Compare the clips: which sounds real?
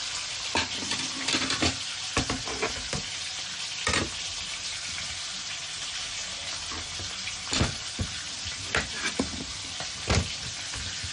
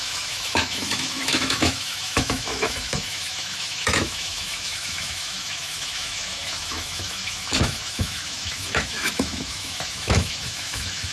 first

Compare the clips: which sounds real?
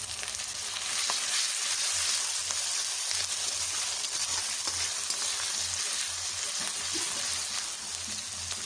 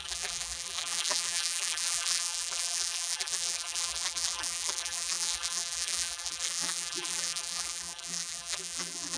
first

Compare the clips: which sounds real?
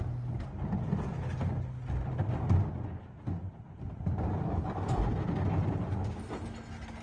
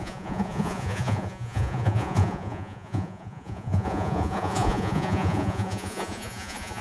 first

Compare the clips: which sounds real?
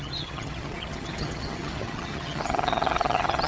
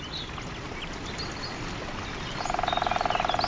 second